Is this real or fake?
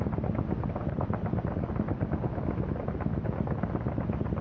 real